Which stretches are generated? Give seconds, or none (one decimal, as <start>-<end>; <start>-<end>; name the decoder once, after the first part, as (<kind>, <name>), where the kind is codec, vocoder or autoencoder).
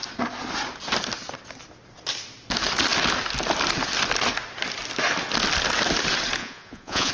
6.4-7.1 (vocoder, Vocos)